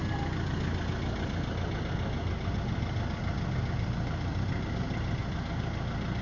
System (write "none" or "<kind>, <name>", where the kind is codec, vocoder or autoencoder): none